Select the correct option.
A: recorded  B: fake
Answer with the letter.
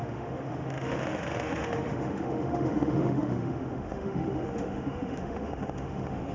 B